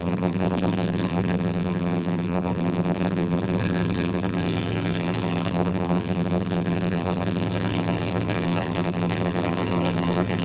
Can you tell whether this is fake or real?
fake